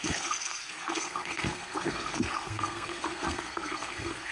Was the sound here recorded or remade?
remade